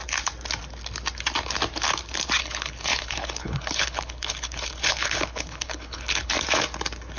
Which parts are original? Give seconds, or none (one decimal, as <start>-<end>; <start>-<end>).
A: 0.0-2.4; 6.3-7.2